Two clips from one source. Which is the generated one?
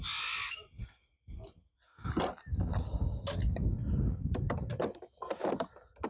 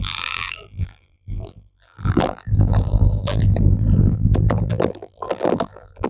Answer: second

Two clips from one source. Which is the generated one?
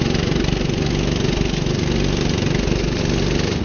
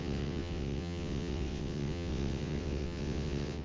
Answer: second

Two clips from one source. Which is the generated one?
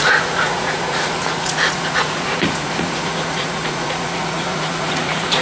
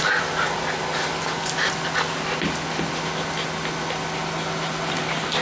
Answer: first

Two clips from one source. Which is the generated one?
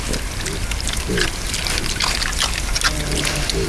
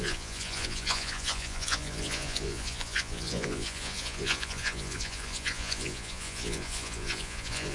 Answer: second